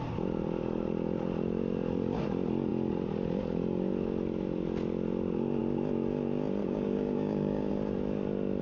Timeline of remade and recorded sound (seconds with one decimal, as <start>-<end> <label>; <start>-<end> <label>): 0.0-6.6 recorded; 6.6-7.7 remade; 7.7-8.6 recorded